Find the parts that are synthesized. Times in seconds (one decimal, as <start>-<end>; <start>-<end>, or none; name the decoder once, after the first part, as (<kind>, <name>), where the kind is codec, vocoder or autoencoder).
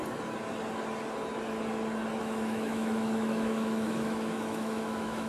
2.2-5.3 (autoencoder, DAC-VAE)